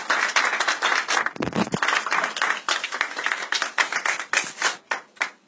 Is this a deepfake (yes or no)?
no